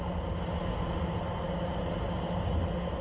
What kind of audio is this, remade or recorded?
recorded